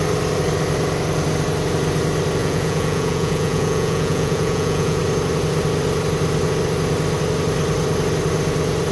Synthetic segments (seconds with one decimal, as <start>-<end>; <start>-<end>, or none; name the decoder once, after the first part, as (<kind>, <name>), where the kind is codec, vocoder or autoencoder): 2.4-5.0 (vocoder, Vocos)